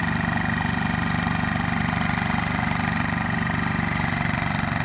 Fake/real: real